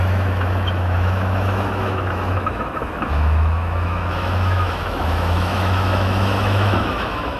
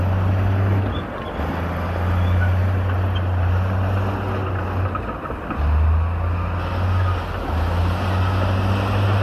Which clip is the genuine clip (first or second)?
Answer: second